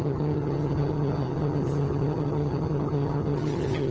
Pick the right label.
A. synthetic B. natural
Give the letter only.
A